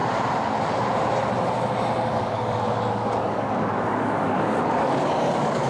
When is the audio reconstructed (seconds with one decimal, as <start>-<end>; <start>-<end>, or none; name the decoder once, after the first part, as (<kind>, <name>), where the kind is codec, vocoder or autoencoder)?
2.1-5.7 (codec, DAC)